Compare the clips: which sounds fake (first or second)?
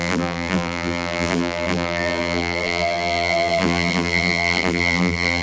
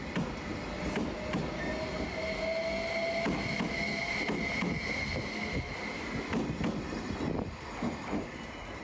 first